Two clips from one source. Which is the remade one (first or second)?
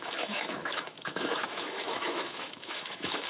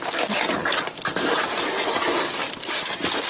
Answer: first